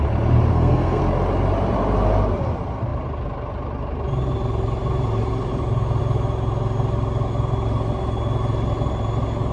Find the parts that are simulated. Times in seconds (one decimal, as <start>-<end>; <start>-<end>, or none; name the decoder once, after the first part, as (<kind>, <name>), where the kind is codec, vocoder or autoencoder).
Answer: 0.5-1.0 (codec, SNAC)